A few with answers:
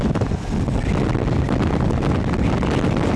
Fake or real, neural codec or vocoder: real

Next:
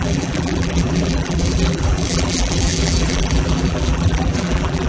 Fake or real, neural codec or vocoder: fake, vocoder, BigVGAN v2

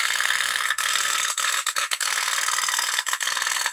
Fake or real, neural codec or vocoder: fake, codec, SNAC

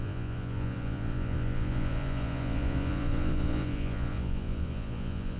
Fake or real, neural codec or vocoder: fake, vocoder, Vocos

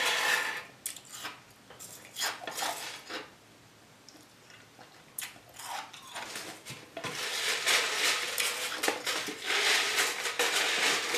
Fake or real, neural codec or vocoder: real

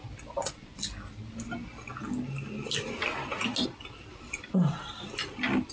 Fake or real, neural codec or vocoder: real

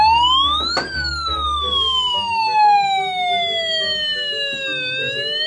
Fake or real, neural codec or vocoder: real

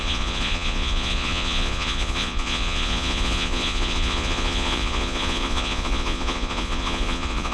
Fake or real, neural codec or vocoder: fake, vocoder, Vocos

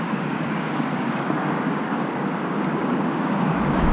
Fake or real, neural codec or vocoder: fake, codec, DAC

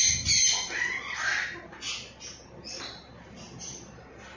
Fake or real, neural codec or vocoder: real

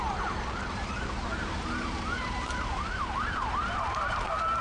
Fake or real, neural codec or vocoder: fake, vocoder, BigVGAN v2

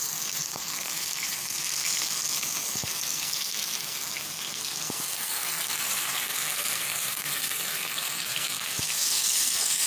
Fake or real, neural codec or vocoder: fake, codec, SNAC